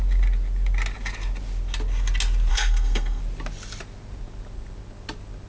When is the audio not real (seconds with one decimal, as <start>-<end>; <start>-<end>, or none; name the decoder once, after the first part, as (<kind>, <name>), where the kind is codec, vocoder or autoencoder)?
2.5-3.2 (codec, SNAC)